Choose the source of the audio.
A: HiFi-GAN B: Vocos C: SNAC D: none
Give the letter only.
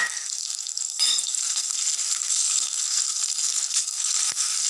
C